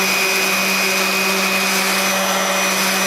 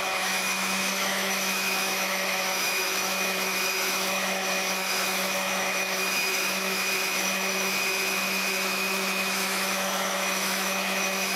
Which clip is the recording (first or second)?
first